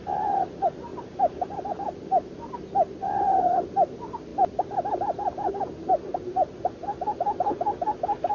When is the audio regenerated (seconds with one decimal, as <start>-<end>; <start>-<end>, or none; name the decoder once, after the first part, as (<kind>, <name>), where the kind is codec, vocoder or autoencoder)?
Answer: none